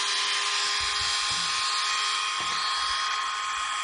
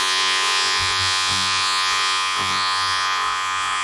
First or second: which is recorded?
first